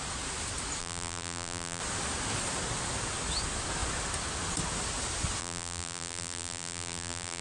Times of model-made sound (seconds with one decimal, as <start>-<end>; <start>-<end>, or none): 0.8-1.8; 5.4-7.4